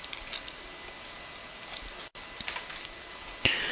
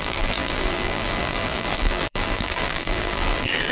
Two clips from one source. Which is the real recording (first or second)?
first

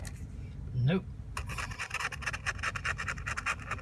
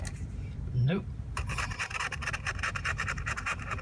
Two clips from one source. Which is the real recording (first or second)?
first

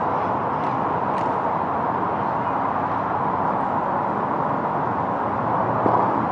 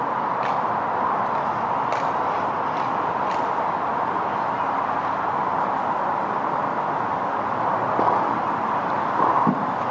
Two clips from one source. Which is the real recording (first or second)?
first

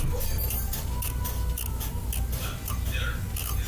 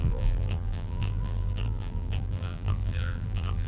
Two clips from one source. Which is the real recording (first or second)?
first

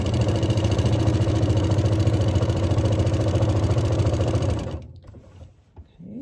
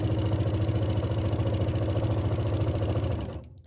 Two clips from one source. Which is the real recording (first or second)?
second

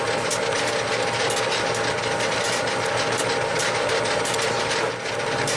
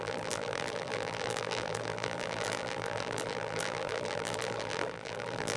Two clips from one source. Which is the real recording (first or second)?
first